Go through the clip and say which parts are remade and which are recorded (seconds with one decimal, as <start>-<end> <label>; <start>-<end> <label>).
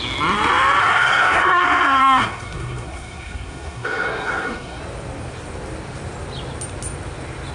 0.0-0.8 recorded; 0.8-1.6 remade; 1.6-2.0 recorded; 2.0-4.8 remade; 4.8-7.5 recorded